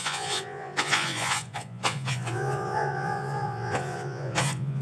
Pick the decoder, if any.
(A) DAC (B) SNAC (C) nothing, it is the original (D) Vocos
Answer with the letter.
D